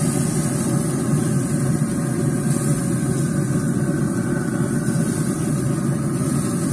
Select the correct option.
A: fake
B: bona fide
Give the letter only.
B